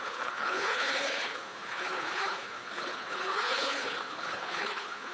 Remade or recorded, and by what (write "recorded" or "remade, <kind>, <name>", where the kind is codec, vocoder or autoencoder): remade, codec, HILCodec